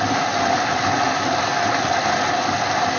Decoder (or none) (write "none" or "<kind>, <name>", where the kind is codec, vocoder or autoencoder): none